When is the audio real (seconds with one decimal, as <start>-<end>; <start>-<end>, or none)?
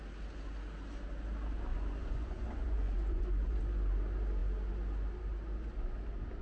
0.0-1.7; 3.6-6.4